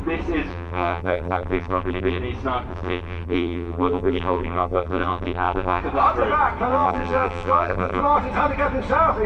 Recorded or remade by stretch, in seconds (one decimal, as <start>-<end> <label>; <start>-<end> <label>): 0.0-0.5 recorded; 0.5-2.2 remade; 2.2-2.7 recorded; 2.7-5.8 remade; 5.8-6.7 recorded; 6.7-8.0 remade; 8.0-9.3 recorded